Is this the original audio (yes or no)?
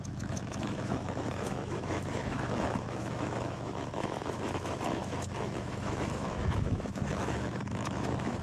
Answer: no